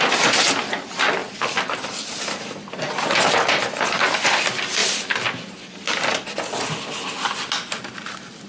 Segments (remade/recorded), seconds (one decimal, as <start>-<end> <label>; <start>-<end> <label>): 0.0-8.5 recorded